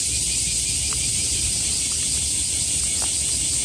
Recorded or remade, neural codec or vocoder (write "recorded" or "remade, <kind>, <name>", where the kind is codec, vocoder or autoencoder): recorded